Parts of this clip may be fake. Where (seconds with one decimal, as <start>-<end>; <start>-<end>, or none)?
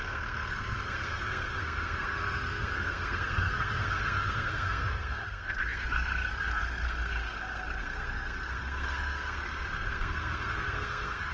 0.0-11.3